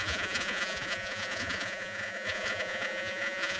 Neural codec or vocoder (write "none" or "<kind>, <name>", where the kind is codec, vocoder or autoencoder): vocoder, Vocos